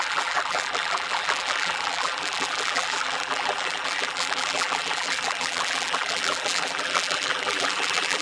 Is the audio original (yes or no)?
no